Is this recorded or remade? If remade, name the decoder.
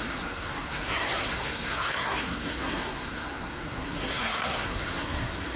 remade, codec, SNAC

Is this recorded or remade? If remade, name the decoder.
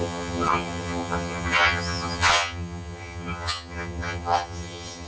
remade, vocoder, HiFi-GAN